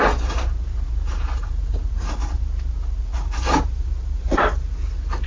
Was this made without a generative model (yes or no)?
yes